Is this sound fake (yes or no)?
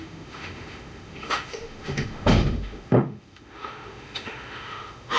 yes